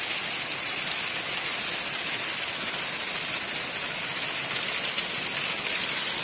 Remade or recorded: recorded